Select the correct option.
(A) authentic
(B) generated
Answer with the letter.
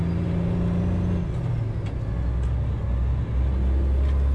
A